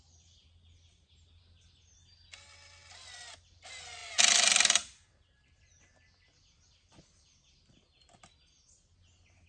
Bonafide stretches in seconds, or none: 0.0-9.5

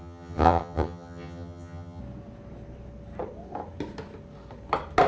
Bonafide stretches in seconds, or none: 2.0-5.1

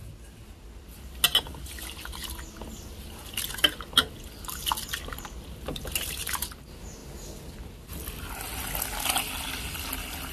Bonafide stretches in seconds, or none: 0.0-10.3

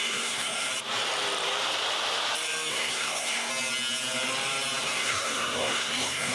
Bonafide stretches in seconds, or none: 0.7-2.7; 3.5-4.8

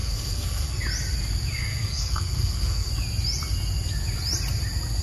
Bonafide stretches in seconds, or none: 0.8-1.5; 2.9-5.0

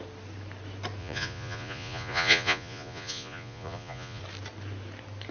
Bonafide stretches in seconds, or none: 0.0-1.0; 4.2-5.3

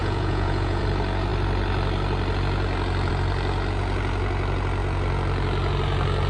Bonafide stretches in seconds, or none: 0.8-6.3

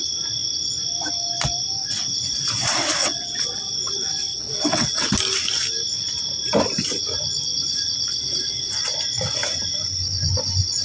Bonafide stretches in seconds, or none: 0.0-3.0; 3.7-4.3; 5.1-8.1; 8.7-10.8